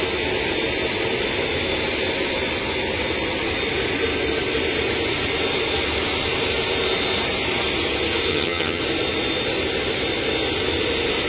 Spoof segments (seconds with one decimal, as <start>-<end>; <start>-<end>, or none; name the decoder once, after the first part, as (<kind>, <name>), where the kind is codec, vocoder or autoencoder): 8.3-8.8 (vocoder, HiFi-GAN)